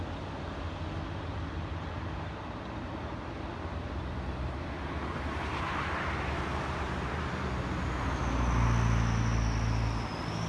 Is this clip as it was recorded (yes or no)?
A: yes